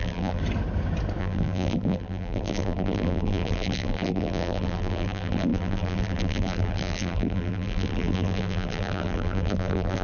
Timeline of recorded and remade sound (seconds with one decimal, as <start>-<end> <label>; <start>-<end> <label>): 0.0-0.4 remade; 0.4-1.2 recorded; 1.2-10.0 remade